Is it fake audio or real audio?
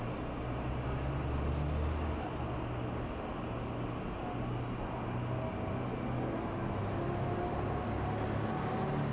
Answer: real